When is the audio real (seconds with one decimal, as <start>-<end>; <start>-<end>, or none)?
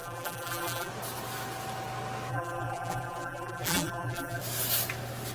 0.9-2.3; 4.4-5.3